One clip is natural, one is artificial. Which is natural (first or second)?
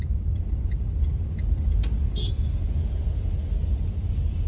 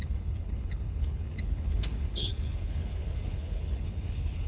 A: first